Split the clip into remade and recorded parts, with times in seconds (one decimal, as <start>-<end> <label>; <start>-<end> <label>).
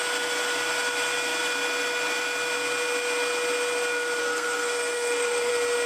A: 0.0-4.2 recorded; 4.2-5.5 remade; 5.5-5.9 recorded